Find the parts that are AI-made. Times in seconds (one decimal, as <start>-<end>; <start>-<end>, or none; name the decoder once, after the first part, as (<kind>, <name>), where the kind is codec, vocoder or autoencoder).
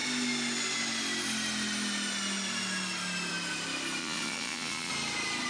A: 4.0-4.9 (vocoder, Vocos)